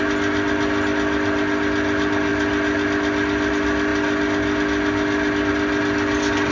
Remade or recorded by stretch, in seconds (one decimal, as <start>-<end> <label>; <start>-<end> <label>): 0.0-6.5 recorded